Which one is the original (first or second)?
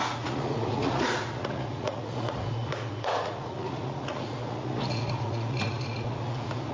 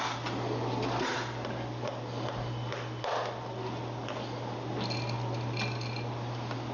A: second